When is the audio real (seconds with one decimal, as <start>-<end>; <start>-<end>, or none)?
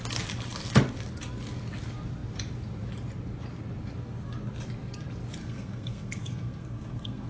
0.0-5.4